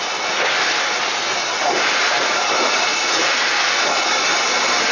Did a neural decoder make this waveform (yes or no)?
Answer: no